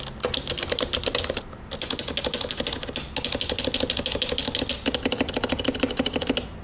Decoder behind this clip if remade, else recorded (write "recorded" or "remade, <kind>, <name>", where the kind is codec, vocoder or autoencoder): recorded